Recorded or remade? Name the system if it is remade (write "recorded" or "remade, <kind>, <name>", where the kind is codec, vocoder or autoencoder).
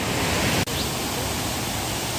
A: recorded